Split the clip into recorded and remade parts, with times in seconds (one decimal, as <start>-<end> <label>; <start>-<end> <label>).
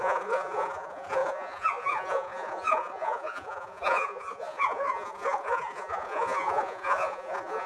0.0-7.7 remade